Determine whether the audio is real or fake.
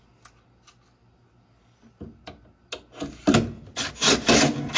real